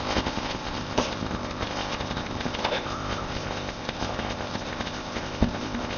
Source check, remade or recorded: remade